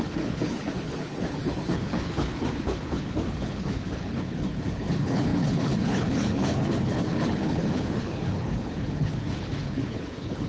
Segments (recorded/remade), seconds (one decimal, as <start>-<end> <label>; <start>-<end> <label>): 0.0-10.5 remade